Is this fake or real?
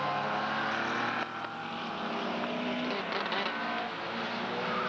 real